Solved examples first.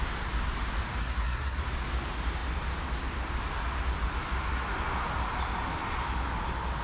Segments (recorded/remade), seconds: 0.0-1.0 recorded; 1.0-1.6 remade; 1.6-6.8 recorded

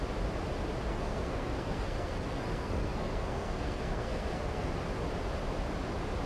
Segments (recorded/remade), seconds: 0.0-0.9 recorded; 0.9-4.7 remade; 4.7-6.3 recorded

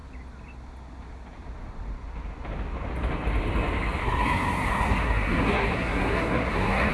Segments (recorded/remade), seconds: 0.0-4.0 recorded; 4.0-6.9 remade